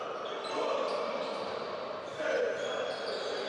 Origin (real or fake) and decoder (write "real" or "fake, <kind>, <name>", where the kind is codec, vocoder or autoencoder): real